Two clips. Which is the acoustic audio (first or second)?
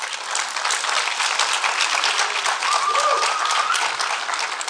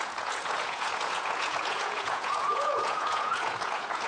first